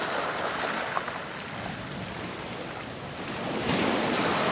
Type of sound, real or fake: real